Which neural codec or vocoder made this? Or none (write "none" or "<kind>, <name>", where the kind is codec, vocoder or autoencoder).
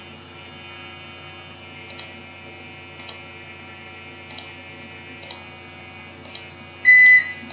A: none